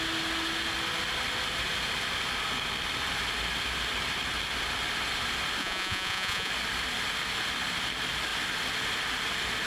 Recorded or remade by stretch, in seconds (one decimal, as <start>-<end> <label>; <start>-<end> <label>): 0.0-5.6 recorded; 5.6-6.5 remade; 6.5-9.7 recorded